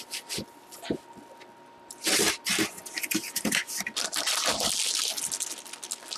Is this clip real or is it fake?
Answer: real